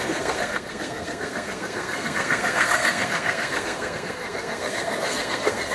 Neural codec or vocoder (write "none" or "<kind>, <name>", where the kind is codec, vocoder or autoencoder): codec, SNAC